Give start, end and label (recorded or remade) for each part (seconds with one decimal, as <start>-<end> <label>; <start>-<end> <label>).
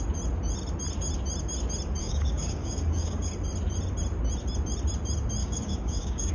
0.0-2.0 recorded; 2.0-3.3 remade; 3.3-5.4 recorded; 5.4-6.3 remade